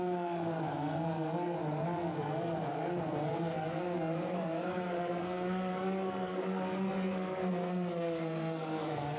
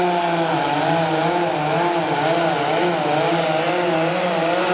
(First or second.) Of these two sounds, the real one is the second